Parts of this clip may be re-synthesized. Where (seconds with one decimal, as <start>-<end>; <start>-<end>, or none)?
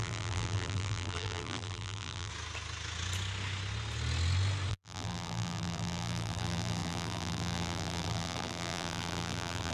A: 0.0-2.3; 4.7-9.7